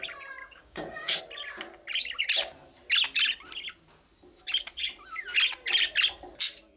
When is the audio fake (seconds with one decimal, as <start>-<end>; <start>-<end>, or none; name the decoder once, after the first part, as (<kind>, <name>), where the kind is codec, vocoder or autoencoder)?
0.4-1.2 (codec, DAC)